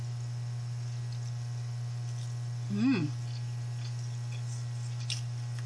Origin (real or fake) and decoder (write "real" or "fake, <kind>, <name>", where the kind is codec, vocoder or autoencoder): real